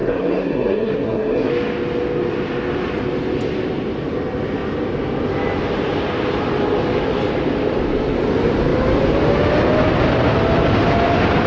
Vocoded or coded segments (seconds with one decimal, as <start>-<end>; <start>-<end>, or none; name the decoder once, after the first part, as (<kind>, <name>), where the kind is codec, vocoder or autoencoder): 0.0-1.5 (codec, SNAC)